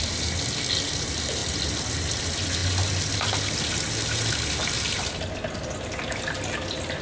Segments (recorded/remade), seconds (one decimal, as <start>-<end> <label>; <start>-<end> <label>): 0.0-7.0 recorded